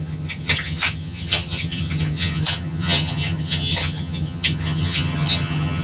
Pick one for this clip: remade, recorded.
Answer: remade